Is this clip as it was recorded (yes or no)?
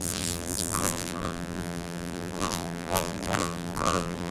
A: no